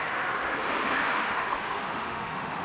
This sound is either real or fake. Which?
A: fake